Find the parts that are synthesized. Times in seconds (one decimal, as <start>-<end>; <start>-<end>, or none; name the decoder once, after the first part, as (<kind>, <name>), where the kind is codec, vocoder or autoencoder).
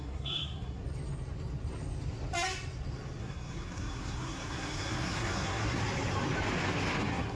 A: 0.0-0.8 (codec, SNAC); 3.2-5.8; 7.0-7.4